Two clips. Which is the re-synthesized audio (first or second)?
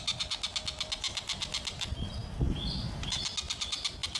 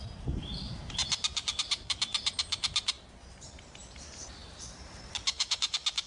second